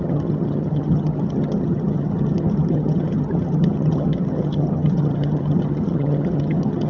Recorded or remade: remade